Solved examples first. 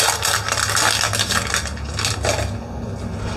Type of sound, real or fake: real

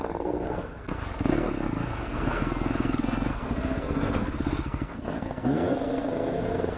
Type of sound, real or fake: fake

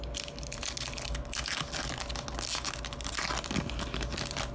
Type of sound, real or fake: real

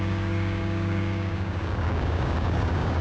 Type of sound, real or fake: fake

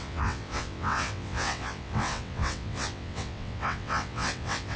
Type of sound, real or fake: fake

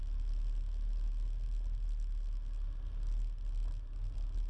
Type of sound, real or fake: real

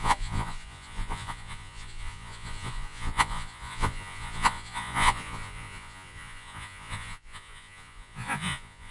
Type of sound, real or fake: fake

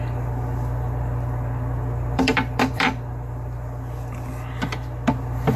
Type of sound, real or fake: fake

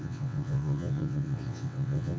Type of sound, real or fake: fake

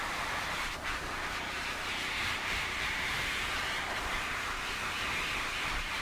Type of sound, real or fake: fake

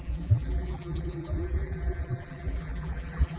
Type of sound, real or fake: fake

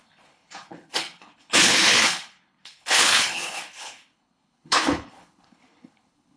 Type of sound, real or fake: fake